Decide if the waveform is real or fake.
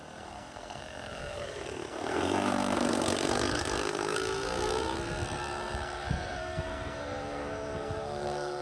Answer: fake